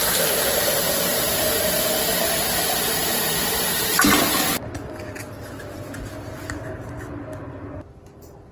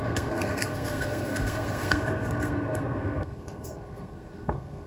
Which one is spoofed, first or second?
second